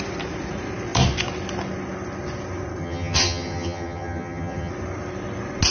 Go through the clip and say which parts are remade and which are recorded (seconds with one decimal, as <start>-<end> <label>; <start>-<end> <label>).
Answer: 0.0-2.8 recorded; 2.8-4.7 remade; 4.7-5.7 recorded